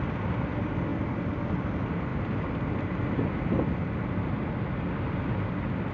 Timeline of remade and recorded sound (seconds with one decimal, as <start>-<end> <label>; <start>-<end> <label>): 0.0-5.9 recorded